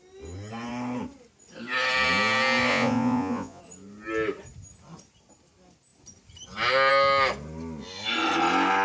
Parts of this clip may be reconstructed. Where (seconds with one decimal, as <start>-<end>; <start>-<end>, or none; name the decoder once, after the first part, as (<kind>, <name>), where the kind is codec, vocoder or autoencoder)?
2.7-3.6 (vocoder, Vocos)